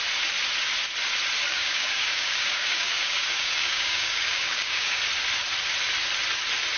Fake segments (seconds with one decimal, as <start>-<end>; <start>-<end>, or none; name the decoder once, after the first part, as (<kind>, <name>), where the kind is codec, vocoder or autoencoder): 1.5-5.0 (codec, DAC)